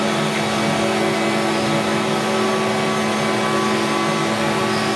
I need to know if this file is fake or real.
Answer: real